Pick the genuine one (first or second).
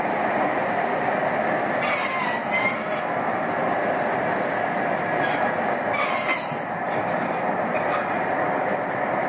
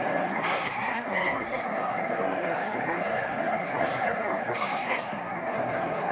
first